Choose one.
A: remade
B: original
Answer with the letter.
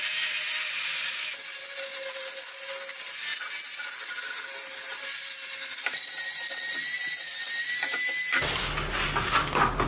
B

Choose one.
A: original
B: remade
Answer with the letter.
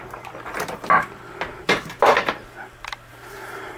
A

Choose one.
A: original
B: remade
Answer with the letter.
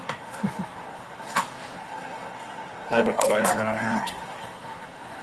B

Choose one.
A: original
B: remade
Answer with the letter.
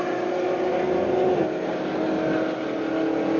A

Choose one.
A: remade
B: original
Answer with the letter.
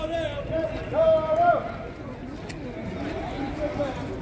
B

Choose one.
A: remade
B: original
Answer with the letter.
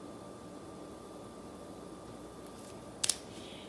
B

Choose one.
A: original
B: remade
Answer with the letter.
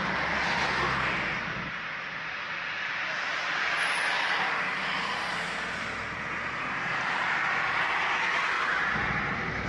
A